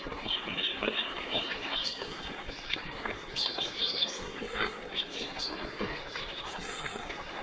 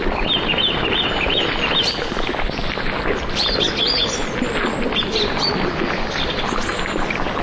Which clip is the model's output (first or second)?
first